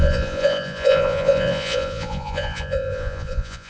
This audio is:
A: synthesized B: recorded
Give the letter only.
A